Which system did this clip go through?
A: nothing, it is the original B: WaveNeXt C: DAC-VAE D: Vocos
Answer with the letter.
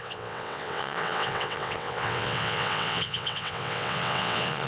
B